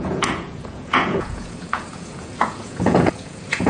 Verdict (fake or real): fake